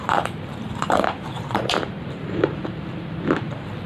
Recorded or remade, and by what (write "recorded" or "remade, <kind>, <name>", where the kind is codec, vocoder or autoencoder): remade, vocoder, BigVGAN v2